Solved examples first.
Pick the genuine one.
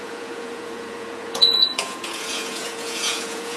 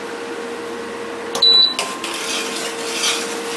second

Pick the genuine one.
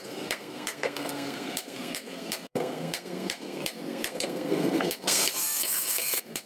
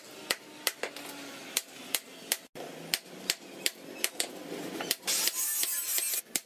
second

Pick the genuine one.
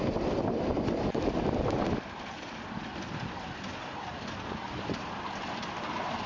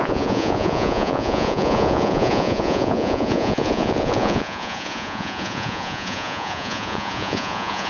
first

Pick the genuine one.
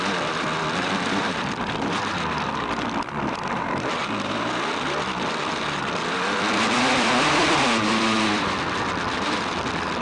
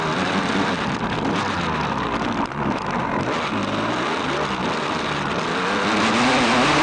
second